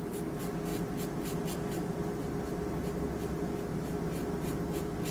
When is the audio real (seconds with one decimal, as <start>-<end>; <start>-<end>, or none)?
0.0-5.1